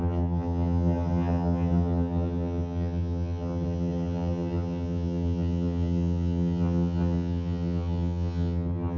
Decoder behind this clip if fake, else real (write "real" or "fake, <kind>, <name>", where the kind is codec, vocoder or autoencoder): fake, vocoder, HiFi-GAN